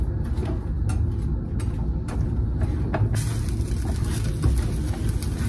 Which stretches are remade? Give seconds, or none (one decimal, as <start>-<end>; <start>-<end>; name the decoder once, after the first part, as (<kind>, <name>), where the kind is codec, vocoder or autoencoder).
none